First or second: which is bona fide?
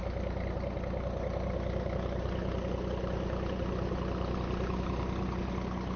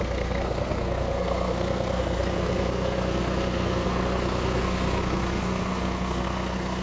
first